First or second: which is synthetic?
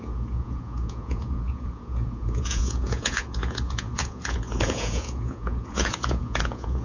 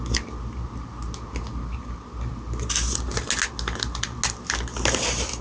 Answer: first